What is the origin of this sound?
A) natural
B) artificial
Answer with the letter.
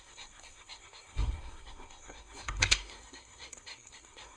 B